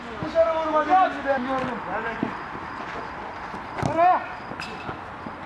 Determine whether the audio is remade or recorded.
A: recorded